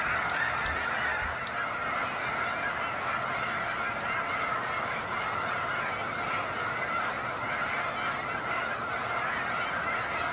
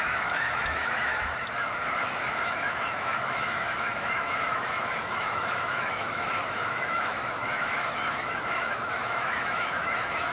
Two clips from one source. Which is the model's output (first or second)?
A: second